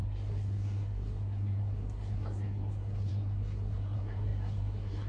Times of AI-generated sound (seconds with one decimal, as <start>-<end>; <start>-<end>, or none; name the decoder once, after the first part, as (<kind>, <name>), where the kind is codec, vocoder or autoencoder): 0.0-5.1 (codec, SNAC)